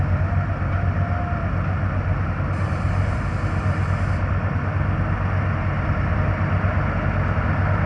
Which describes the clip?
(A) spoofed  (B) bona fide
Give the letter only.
B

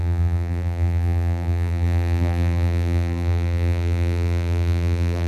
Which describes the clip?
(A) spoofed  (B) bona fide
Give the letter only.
A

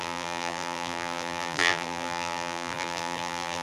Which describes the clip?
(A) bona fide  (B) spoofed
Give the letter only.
B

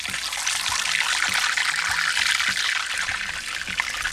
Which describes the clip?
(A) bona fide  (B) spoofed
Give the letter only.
A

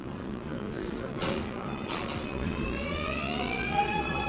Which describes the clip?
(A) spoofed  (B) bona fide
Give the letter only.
A